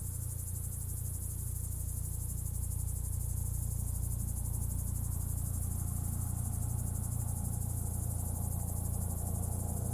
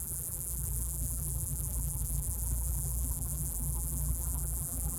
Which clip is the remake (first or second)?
second